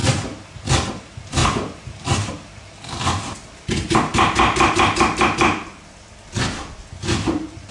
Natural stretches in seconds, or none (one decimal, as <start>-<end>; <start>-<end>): 0.9-1.4; 2.3-7.7